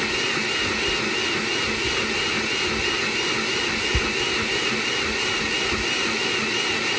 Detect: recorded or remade recorded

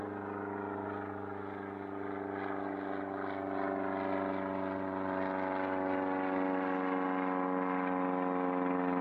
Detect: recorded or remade recorded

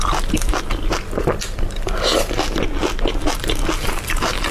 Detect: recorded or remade recorded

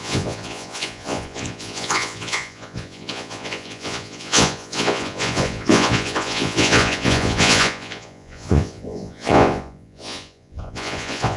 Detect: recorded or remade remade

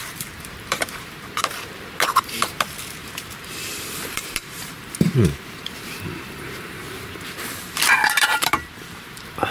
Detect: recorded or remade remade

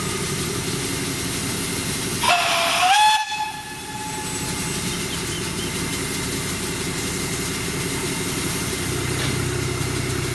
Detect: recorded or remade recorded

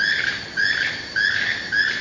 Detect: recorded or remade recorded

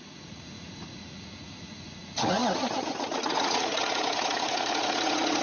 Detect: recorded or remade remade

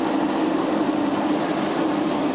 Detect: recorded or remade recorded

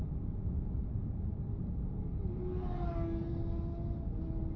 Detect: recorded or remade recorded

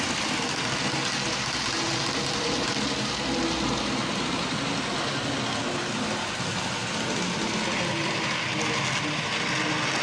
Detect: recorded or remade recorded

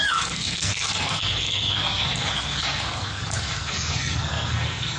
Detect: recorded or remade remade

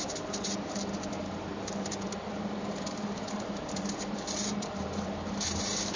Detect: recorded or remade remade